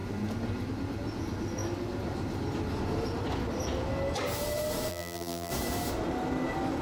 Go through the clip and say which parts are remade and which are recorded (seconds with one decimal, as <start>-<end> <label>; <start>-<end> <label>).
0.0-4.9 recorded; 4.9-5.5 remade; 5.5-6.8 recorded

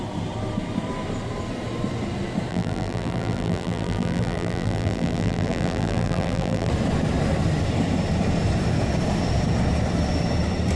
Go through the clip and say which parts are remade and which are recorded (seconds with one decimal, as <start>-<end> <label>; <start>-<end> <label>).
0.0-2.5 recorded; 2.5-6.7 remade; 6.7-10.8 recorded